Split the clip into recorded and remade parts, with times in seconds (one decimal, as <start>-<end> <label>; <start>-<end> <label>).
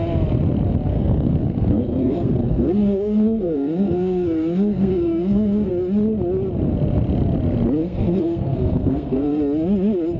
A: 0.0-0.9 recorded; 0.9-5.7 remade; 5.7-7.8 recorded; 7.8-9.4 remade; 9.4-10.2 recorded